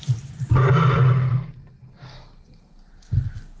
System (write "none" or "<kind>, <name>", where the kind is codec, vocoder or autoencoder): none